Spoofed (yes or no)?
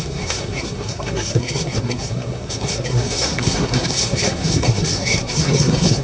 yes